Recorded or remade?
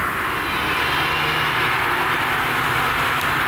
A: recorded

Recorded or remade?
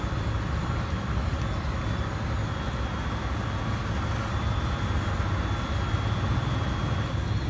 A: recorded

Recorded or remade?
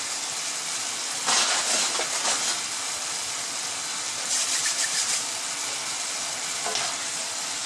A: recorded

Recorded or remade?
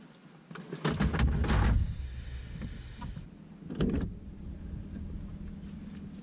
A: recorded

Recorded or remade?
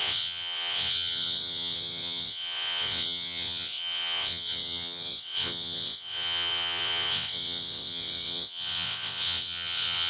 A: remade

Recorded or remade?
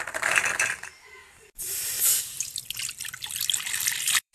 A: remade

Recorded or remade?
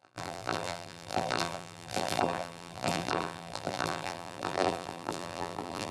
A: remade